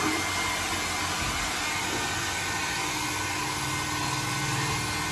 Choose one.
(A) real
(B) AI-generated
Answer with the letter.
A